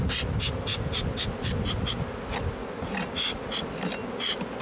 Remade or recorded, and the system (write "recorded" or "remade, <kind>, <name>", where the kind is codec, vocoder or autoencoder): recorded